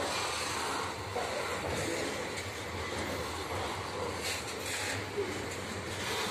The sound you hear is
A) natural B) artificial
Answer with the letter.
A